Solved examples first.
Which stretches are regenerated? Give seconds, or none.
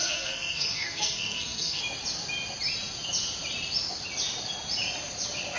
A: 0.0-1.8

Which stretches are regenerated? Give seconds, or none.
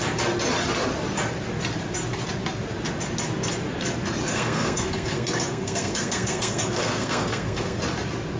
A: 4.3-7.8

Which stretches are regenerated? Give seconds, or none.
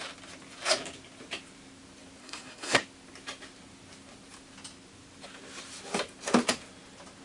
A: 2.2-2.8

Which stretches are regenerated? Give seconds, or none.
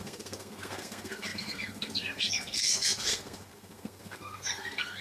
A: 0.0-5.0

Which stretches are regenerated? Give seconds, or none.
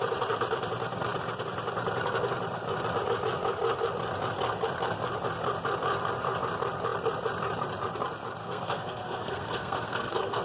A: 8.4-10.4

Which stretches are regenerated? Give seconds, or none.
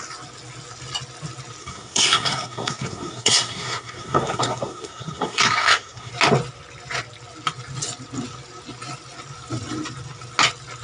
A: 1.6-6.1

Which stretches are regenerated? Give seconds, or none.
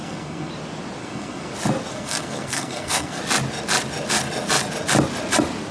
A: 0.0-0.5; 1.0-1.5; 1.9-3.2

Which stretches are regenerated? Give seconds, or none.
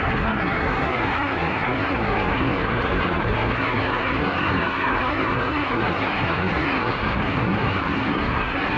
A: 0.0-8.8